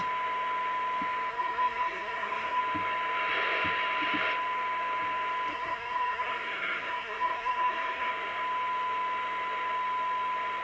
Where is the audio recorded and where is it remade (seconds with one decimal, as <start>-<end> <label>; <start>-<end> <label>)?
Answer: 0.0-1.3 recorded; 1.3-2.6 remade; 2.6-5.5 recorded; 5.5-8.1 remade; 8.1-10.6 recorded